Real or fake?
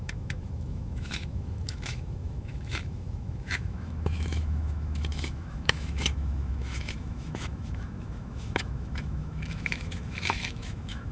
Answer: fake